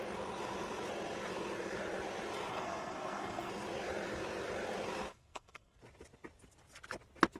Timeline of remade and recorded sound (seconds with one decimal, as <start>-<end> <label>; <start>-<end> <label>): 0.0-2.5 recorded; 2.5-3.5 remade; 3.5-5.1 recorded; 5.1-5.8 remade; 5.8-7.4 recorded